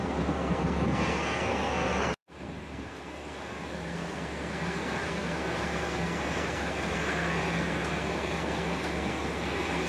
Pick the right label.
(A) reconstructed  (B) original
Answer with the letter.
A